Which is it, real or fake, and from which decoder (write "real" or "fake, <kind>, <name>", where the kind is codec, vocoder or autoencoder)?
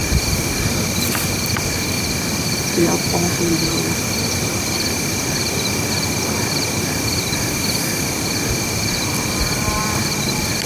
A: fake, vocoder, BigVGAN v2